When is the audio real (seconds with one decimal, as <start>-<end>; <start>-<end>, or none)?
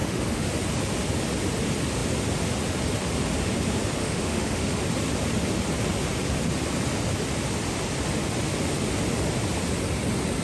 0.5-4.0; 4.8-10.4